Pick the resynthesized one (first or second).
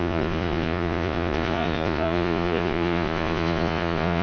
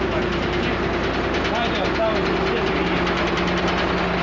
first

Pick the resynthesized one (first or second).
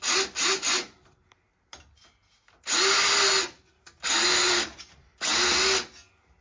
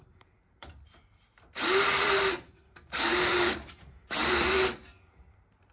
second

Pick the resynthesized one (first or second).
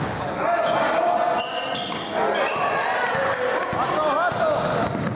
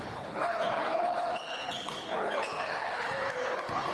second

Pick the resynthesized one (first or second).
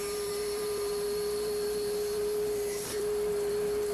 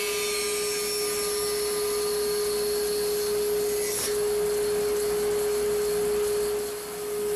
first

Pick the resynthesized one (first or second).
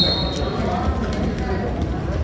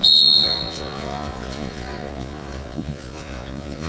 second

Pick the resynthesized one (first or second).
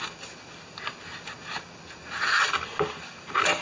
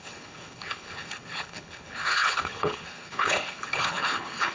second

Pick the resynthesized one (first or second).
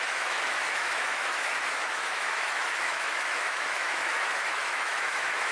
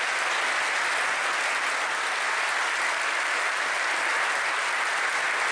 first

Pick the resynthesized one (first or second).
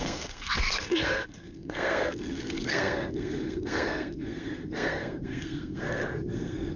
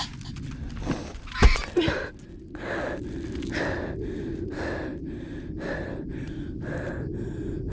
first